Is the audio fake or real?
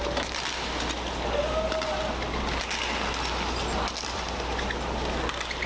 real